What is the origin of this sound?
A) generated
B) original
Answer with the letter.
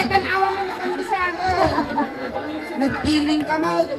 A